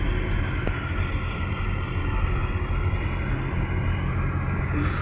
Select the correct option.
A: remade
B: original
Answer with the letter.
B